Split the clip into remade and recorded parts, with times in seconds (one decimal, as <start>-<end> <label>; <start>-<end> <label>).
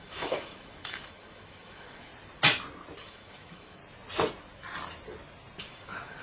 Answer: 0.0-2.1 remade; 2.1-3.0 recorded; 3.0-3.8 remade; 3.8-5.6 recorded; 5.6-6.2 remade